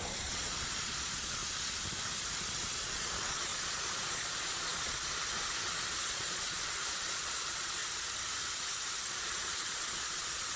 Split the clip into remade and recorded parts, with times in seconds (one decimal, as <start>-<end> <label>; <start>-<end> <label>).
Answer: 0.0-1.4 remade; 1.4-2.7 recorded; 2.7-5.2 remade; 5.2-5.9 recorded; 5.9-7.8 remade; 7.8-9.0 recorded; 9.0-10.6 remade